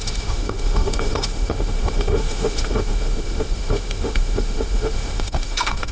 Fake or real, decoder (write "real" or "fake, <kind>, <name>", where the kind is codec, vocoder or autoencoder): fake, autoencoder, DAC-VAE